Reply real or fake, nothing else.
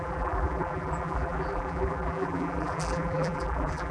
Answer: fake